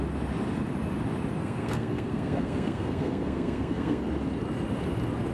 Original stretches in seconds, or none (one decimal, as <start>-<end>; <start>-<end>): 0.0-1.4; 4.0-5.3